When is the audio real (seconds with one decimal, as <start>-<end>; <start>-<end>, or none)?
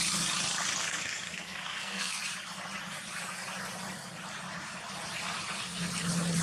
0.0-0.8; 2.2-6.4